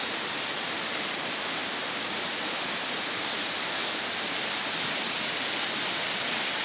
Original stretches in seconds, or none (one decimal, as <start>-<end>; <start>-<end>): 0.0-6.6